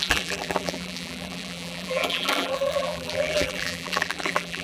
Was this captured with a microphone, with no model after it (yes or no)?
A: no